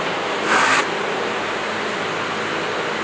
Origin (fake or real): real